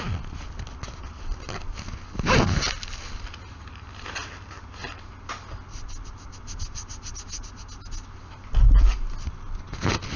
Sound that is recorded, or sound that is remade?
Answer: recorded